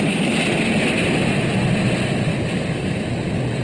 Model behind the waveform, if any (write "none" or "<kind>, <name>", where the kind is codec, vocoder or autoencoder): none